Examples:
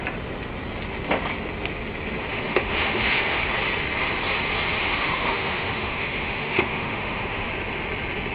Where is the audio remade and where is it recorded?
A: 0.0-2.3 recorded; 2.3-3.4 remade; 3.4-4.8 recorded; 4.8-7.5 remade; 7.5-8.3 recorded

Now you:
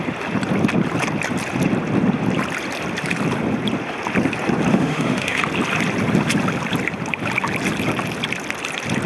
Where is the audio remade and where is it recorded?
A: 0.0-4.7 recorded; 4.7-5.4 remade; 5.4-9.1 recorded

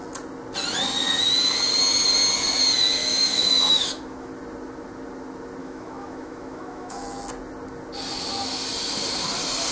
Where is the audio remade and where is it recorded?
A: 0.0-3.0 recorded; 3.0-4.3 remade; 4.3-5.6 recorded; 5.6-7.2 remade; 7.2-9.7 recorded

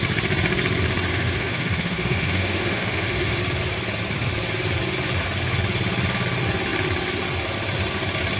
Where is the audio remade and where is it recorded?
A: 0.0-1.1 recorded; 1.1-3.4 remade; 3.4-8.4 recorded

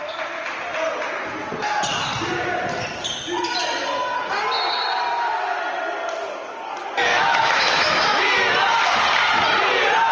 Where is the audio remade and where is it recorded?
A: 0.0-7.1 recorded; 7.1-8.2 remade; 8.2-10.1 recorded

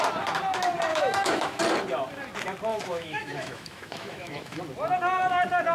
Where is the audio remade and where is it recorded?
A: 0.0-0.9 recorded; 0.9-1.6 remade; 1.6-2.7 recorded; 2.7-4.6 remade; 4.6-5.7 recorded

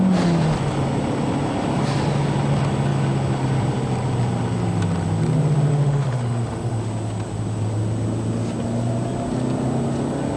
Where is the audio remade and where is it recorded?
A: 0.0-5.7 recorded; 5.7-6.8 remade; 6.8-10.4 recorded

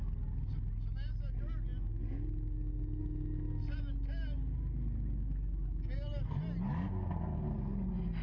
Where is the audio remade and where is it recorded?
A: 0.0-8.2 recorded